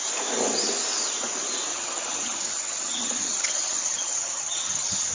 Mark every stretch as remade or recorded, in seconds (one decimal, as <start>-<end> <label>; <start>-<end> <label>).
0.0-1.7 recorded; 1.7-5.1 remade